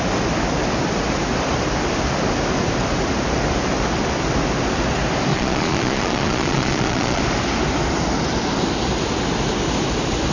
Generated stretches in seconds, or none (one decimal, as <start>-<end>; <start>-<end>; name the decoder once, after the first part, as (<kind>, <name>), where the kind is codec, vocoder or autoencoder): 5.3-7.2 (vocoder, Vocos)

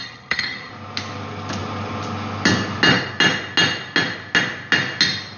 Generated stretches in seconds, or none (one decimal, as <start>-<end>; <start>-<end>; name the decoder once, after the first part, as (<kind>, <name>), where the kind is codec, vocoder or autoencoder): 0.0-0.7 (vocoder, HiFi-GAN)

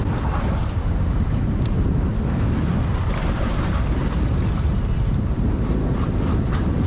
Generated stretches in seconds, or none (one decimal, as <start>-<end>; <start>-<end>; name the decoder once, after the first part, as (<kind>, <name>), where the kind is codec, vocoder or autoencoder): 0.6-2.2 (vocoder, BigVGAN v2); 2.7-6.9